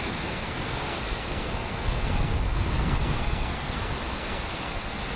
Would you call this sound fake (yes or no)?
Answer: yes